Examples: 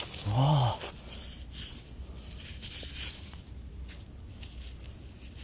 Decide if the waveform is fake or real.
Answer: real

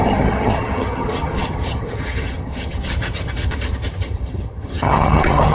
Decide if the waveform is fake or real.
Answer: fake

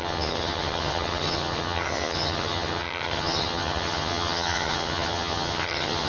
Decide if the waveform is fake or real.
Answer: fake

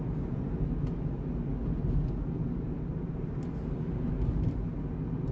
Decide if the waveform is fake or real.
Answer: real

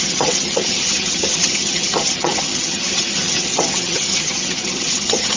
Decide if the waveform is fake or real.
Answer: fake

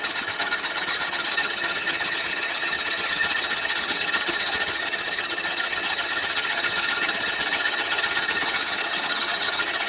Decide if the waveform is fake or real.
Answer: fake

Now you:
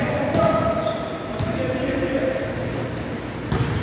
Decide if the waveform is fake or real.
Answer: real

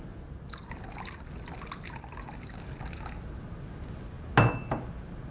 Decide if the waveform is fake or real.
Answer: real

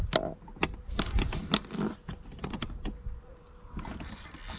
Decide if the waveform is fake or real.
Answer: real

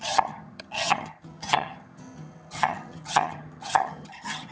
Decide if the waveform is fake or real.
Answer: fake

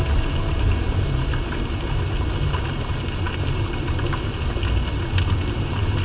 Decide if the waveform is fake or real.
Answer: real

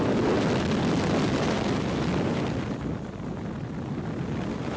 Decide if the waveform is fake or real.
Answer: real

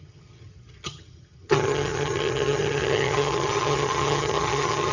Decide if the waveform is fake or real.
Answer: fake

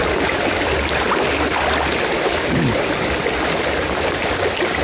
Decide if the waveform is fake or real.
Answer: real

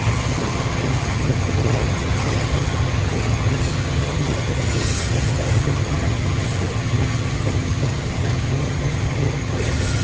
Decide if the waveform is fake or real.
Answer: fake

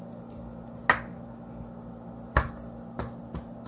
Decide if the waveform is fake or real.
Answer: real